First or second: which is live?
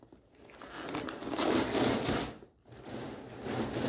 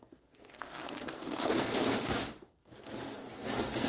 first